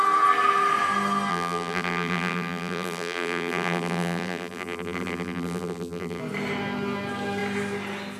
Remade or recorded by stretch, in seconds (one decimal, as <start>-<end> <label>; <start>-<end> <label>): 0.0-1.3 recorded; 1.3-6.2 remade; 6.2-8.2 recorded